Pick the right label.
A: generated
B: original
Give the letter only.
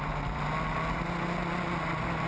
B